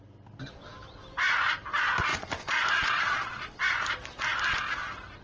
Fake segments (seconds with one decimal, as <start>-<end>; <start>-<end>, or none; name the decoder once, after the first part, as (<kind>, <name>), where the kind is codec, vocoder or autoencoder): 2.1-3.6 (vocoder, Vocos)